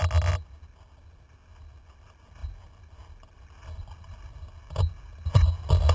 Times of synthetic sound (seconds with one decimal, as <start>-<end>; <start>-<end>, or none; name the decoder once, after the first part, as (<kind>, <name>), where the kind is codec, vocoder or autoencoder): none